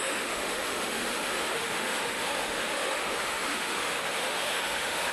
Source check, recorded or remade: remade